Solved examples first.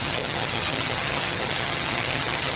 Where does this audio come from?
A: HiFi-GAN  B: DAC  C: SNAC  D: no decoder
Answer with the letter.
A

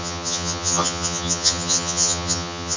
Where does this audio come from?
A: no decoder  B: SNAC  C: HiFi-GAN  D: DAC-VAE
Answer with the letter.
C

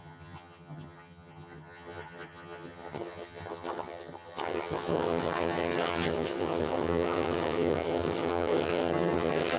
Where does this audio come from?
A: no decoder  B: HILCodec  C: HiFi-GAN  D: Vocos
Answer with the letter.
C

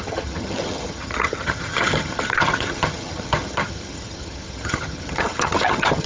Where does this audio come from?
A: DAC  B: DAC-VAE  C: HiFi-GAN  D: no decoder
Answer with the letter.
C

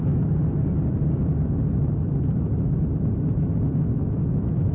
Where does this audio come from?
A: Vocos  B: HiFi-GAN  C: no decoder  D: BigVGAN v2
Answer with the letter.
C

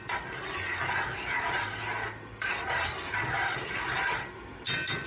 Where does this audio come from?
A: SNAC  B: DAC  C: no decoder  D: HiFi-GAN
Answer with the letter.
C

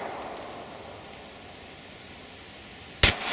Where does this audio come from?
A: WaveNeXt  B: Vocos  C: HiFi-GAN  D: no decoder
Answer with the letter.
D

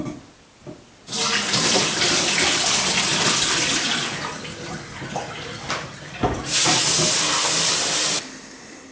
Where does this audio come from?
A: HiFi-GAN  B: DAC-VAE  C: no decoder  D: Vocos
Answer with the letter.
C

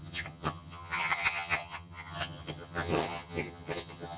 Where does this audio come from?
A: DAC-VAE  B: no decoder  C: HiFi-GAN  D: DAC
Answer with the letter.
C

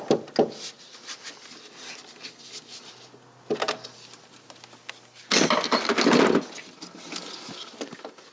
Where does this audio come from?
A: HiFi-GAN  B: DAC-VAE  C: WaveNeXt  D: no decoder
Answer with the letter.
D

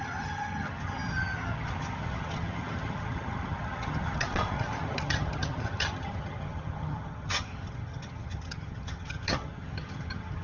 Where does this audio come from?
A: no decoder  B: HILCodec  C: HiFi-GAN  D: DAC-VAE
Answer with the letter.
C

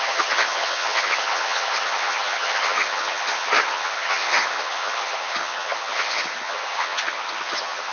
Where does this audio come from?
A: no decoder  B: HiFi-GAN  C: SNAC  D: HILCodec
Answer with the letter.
B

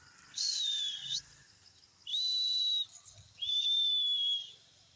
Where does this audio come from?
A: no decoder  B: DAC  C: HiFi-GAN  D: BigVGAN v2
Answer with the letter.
A